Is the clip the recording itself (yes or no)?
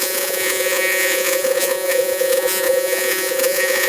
no